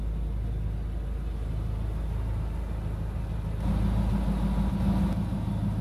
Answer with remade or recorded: recorded